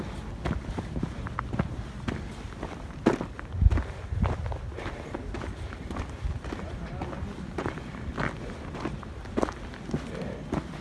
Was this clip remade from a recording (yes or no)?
no